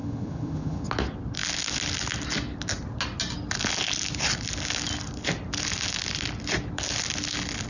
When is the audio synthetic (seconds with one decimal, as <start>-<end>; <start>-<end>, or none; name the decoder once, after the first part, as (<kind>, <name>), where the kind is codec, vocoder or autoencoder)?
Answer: 0.0-0.9 (vocoder, HiFi-GAN)